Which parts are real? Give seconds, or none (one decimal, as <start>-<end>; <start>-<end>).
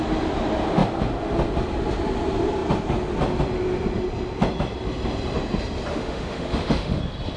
0.0-5.9; 7.0-7.4